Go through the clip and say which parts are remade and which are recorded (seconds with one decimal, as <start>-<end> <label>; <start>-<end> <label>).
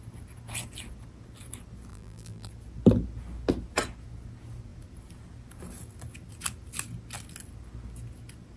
0.0-1.9 recorded; 1.9-2.5 remade; 2.5-8.6 recorded